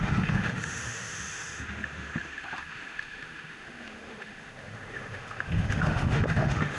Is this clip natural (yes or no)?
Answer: no